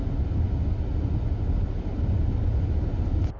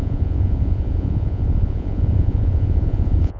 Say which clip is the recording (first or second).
first